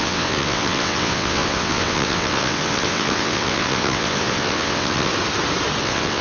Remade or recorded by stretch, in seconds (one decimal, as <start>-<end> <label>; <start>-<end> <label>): 0.0-5.1 remade; 5.1-5.8 recorded; 5.8-6.2 remade